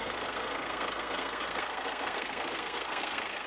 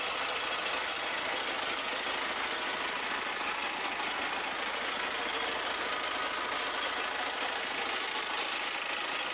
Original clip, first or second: second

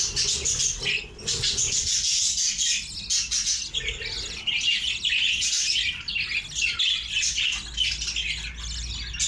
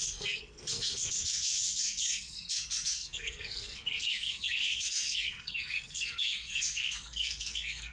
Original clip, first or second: first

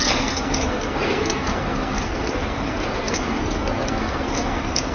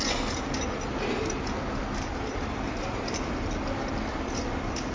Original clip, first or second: second